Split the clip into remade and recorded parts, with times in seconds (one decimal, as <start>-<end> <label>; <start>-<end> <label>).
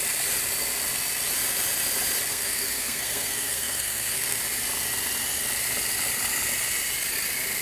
0.0-2.3 recorded; 2.3-4.4 remade; 4.4-7.6 recorded